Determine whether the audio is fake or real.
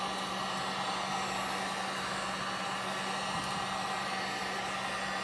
real